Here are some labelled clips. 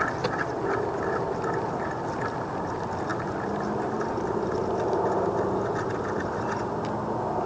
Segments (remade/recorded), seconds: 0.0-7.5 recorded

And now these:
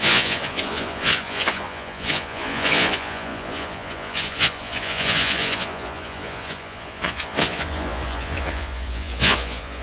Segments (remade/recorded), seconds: 0.0-9.8 remade

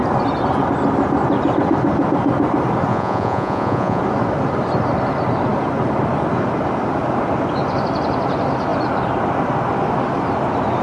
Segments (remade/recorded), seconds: 0.0-2.9 recorded; 2.9-4.0 remade; 4.0-10.8 recorded

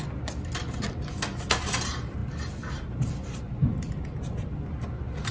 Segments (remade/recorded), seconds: 0.0-5.3 recorded

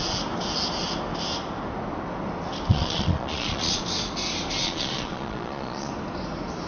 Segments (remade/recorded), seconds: 0.0-2.7 recorded; 2.7-3.8 remade; 3.8-4.6 recorded; 4.6-5.9 remade; 5.9-6.7 recorded

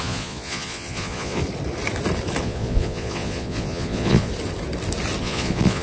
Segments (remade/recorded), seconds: 0.0-1.4 remade; 1.4-2.4 recorded; 2.4-4.3 remade; 4.3-5.2 recorded; 5.2-5.8 remade

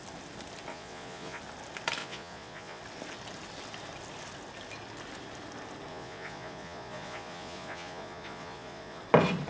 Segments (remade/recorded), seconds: 0.0-0.7 recorded; 0.7-1.4 remade; 1.4-2.0 recorded; 2.0-2.8 remade; 2.8-5.9 recorded; 5.9-9.0 remade; 9.0-9.5 recorded

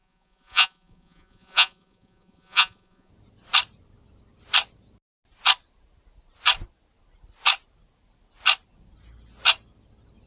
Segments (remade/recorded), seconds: 0.0-3.1 remade; 3.1-10.3 recorded